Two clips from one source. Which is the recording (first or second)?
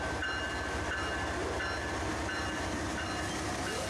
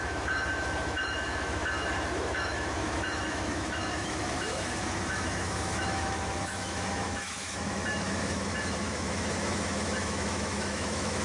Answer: first